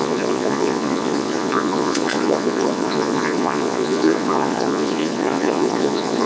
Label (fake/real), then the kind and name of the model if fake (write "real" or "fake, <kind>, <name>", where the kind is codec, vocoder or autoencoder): fake, vocoder, Vocos